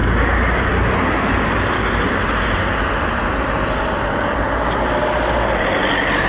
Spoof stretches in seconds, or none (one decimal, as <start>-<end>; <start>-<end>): none